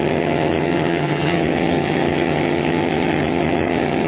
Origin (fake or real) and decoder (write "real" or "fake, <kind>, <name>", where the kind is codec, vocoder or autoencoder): fake, vocoder, HiFi-GAN